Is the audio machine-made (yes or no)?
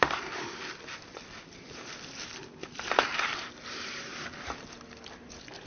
yes